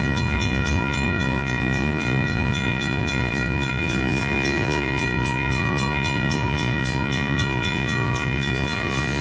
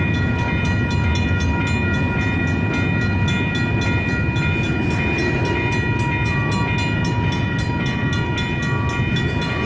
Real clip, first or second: second